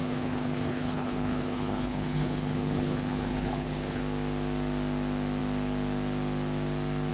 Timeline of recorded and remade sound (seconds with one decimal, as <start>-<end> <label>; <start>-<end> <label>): 0.0-4.0 remade; 4.0-7.1 recorded